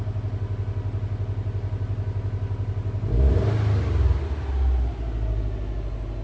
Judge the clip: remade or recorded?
recorded